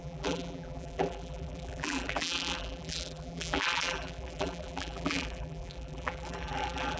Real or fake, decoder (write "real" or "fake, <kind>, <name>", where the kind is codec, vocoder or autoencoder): fake, vocoder, BigVGAN v2